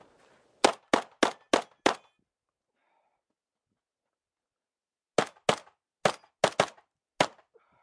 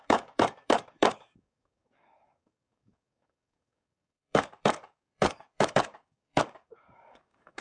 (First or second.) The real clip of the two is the first